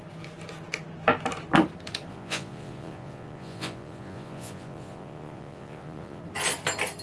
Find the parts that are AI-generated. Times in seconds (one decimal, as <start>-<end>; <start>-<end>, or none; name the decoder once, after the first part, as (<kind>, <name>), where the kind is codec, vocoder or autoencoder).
2.1-6.2 (vocoder, Vocos)